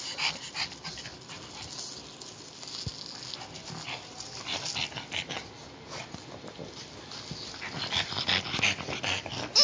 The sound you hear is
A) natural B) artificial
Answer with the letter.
A